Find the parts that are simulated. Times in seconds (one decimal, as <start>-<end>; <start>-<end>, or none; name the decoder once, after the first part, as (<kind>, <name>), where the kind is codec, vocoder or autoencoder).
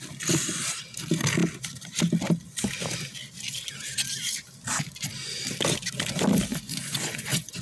6.5-7.6 (vocoder, Vocos)